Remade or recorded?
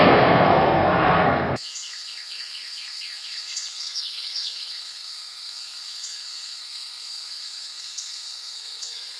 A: remade